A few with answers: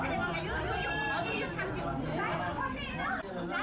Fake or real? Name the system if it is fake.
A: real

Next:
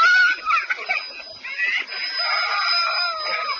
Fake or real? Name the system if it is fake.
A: real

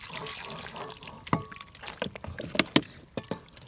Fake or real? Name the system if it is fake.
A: real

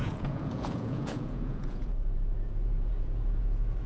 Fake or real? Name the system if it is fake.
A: fake, vocoder, Vocos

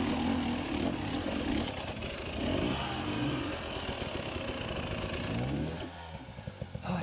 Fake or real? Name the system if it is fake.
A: real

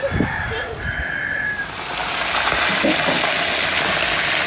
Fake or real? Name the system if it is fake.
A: real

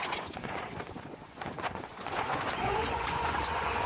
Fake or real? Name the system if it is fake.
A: fake, vocoder, Vocos